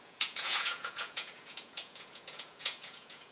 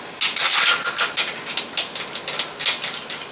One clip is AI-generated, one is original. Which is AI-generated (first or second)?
first